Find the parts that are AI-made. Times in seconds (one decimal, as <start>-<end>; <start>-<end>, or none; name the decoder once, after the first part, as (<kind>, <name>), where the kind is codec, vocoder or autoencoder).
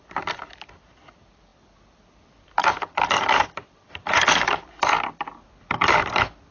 0.0-6.5 (vocoder, BigVGAN v2)